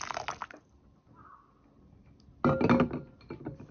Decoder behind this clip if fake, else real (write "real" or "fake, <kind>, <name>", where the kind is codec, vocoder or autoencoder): real